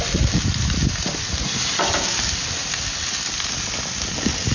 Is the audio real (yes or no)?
yes